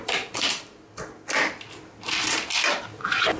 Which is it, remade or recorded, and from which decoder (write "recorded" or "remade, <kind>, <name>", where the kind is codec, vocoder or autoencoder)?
recorded